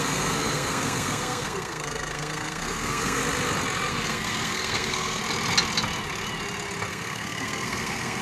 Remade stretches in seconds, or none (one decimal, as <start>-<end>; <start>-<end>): 0.0-3.2; 3.9-5.2; 6.9-8.2